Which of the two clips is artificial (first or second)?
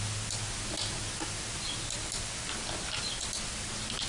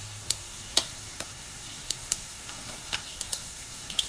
second